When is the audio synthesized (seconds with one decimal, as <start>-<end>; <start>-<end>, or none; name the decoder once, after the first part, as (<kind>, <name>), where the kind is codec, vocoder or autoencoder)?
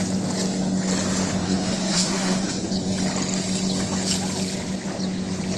1.4-2.7 (codec, SNAC)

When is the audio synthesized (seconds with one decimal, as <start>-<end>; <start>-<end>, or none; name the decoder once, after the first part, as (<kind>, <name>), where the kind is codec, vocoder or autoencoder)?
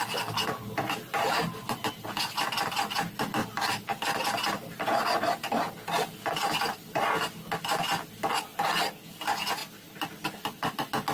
none